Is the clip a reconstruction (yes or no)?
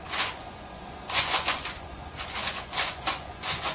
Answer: yes